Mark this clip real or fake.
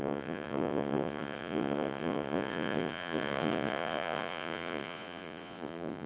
fake